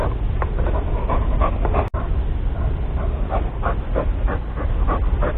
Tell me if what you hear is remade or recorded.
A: recorded